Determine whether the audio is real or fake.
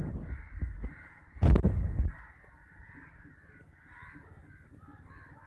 real